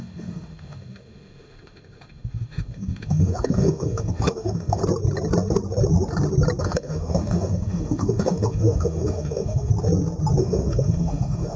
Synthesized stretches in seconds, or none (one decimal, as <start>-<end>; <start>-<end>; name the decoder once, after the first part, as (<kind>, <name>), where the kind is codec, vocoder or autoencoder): 0.0-4.8 (autoencoder, DAC-VAE); 6.6-9.7; 10.4-11.6